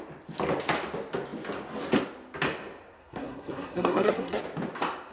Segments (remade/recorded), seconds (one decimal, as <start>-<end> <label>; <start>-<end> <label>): 0.0-3.0 recorded; 3.0-4.4 remade; 4.4-5.1 recorded